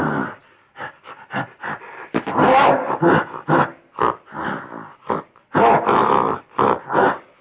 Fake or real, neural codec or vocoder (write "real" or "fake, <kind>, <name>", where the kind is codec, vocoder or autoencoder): real